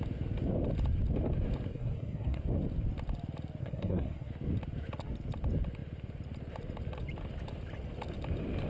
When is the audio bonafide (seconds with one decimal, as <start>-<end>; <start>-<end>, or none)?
0.0-1.7; 2.4-3.6; 4.3-8.7